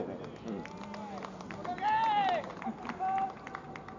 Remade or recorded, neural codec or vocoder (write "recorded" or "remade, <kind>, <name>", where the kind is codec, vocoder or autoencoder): recorded